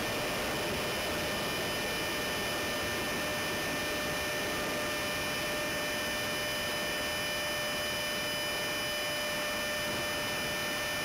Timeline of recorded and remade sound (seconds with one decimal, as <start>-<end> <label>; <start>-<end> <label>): 0.0-11.0 recorded